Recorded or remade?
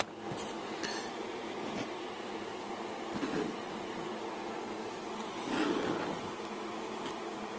recorded